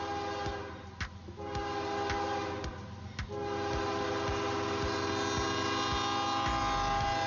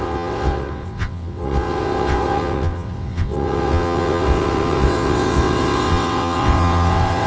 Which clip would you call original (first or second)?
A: first